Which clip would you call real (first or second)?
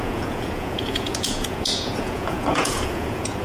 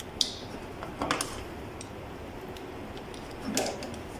second